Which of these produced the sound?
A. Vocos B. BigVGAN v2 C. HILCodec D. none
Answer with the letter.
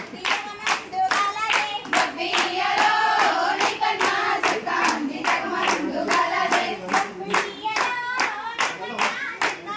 D